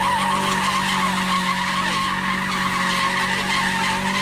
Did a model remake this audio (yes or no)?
no